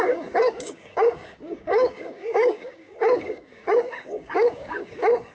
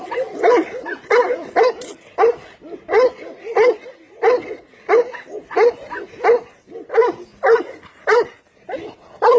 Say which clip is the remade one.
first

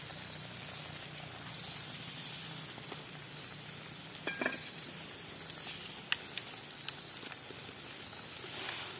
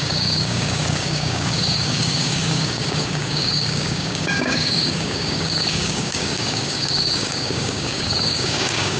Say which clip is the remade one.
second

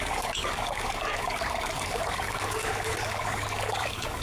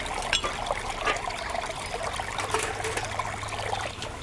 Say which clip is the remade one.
first